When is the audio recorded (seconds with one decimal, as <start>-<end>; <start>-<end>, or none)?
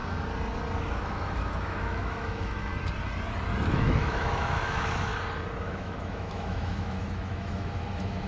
0.0-0.8; 2.7-3.7; 5.1-5.6